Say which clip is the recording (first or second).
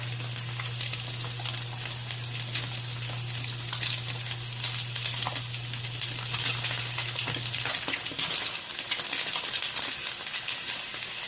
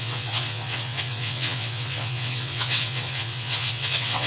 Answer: first